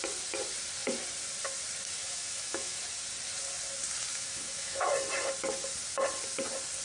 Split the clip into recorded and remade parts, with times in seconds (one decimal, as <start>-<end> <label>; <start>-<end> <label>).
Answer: 0.0-2.0 recorded; 2.0-2.8 remade; 2.8-4.1 recorded; 4.1-4.9 remade; 4.9-6.8 recorded